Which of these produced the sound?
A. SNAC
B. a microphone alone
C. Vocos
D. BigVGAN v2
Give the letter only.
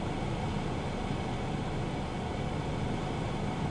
B